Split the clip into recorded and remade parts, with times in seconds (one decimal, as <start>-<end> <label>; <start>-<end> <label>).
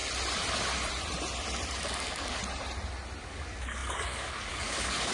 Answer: 0.0-1.8 recorded; 1.8-2.4 remade; 2.4-3.2 recorded; 3.2-5.1 remade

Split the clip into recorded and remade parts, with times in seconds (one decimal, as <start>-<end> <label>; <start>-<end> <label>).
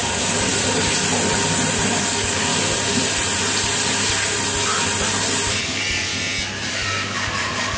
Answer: 0.0-0.5 remade; 0.5-2.0 recorded; 2.0-2.5 remade; 2.5-5.6 recorded; 5.6-6.1 remade; 6.1-6.7 recorded; 6.7-7.8 remade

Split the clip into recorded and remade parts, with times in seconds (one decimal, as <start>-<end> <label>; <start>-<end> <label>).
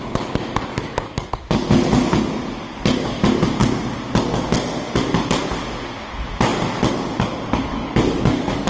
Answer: 0.0-0.7 recorded; 0.7-1.3 remade; 1.3-7.7 recorded; 7.7-8.7 remade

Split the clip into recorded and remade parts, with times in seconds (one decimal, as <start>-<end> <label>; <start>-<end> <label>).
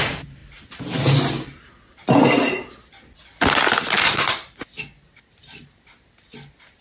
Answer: 0.0-6.8 recorded